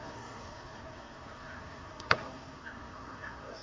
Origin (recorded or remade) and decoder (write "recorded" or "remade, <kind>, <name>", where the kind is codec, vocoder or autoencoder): remade, codec, SNAC